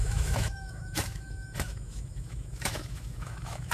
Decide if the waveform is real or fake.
fake